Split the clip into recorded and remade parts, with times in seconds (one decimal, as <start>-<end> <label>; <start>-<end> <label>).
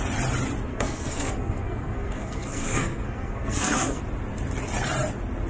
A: 0.0-0.7 recorded; 0.7-4.0 remade; 4.0-5.5 recorded